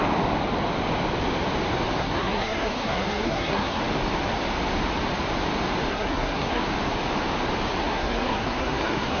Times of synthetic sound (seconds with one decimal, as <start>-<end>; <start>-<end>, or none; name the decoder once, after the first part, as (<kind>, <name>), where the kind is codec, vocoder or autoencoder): 2.0-3.8 (codec, SNAC); 5.9-6.6; 7.8-9.2